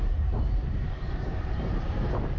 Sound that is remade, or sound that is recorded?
remade